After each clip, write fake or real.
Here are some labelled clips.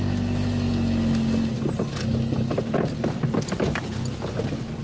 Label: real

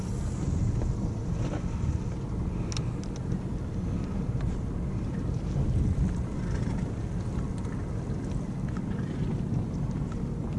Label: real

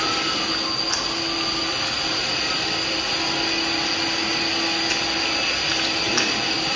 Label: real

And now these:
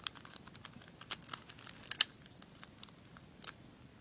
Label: real